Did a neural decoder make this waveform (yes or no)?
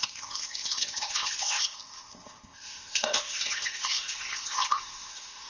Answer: yes